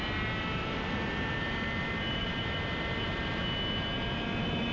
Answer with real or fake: real